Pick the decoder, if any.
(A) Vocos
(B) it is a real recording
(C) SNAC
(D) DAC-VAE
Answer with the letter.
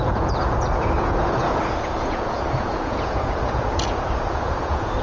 A